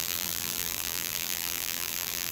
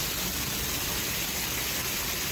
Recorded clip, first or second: second